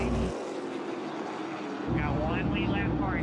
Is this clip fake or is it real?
real